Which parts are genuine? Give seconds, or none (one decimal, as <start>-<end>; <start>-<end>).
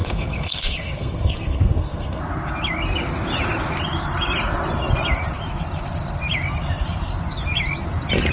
2.2-8.3